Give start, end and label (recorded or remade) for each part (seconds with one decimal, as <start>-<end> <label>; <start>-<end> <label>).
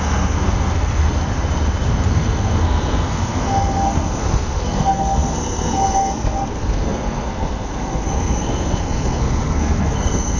0.0-1.0 remade; 1.0-2.1 recorded; 2.1-10.4 remade